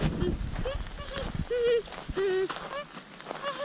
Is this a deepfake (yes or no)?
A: no